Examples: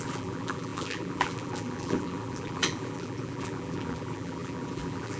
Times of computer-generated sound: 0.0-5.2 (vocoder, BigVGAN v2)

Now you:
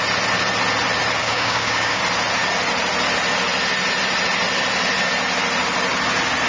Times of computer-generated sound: 1.2-2.0 (codec, DAC)

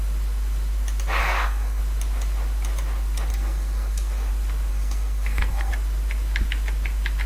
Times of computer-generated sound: 1.2-1.8 (codec, SNAC); 3.3-4.3; 4.7-5.7

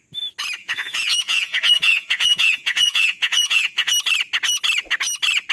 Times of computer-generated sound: 0.6-3.9 (vocoder, Vocos)

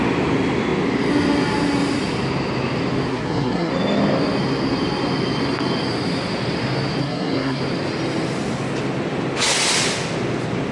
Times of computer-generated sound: 3.1-3.7 (codec, SNAC); 7.0-7.6

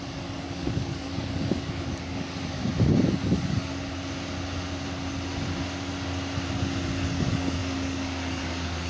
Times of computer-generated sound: 0.0-2.6 (codec, DAC); 3.1-3.7; 7.0-8.9

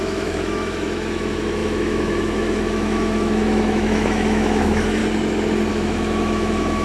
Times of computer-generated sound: 0.0-5.0 (autoencoder, DAC-VAE); 5.7-6.8